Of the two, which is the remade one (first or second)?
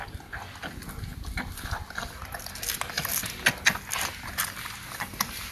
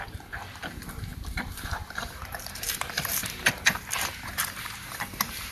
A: second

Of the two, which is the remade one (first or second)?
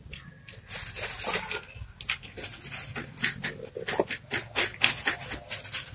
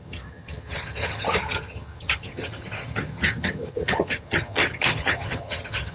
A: second